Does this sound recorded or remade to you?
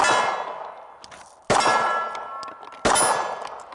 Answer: recorded